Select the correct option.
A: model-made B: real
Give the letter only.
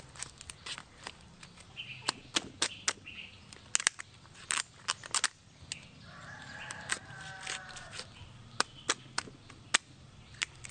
B